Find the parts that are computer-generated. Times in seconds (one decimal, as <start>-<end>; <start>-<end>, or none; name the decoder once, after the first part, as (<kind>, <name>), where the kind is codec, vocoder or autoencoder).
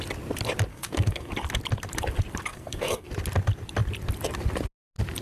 0.7-1.3 (codec, SNAC); 2.5-3.1